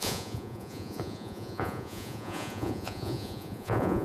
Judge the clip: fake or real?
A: fake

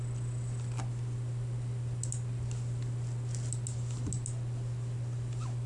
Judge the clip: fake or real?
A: real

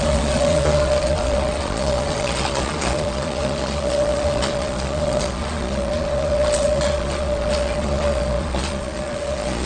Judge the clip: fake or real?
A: fake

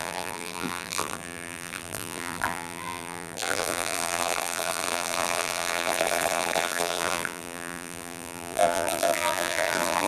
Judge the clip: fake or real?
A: fake